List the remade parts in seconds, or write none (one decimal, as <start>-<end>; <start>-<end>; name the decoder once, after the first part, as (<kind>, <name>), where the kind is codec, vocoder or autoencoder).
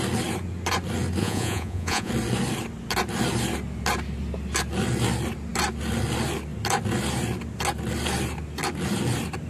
1.2-2.1 (vocoder, Vocos)